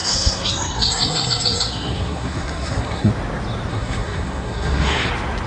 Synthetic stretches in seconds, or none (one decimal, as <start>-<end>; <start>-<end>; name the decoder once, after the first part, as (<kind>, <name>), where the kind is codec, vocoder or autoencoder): 0.0-3.1 (codec, SNAC); 3.7-5.1